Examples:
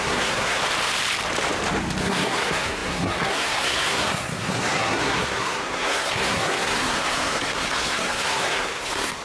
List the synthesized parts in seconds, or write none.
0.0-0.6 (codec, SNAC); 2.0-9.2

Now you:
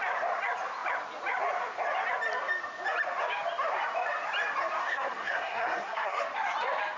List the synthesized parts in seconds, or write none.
4.8-6.2 (codec, SNAC)

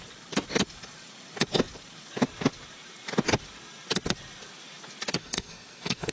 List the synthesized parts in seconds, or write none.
5.2-6.1 (codec, SNAC)

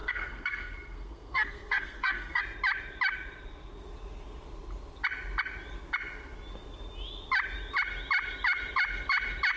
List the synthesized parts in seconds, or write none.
0.0-2.4 (codec, SNAC)

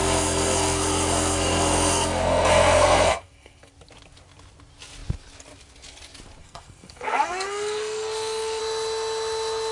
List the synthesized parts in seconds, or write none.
0.0-3.7 (codec, SNAC); 6.4-8.6

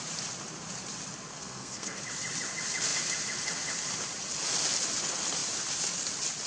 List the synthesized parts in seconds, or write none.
1.3-2.0 (codec, SNAC)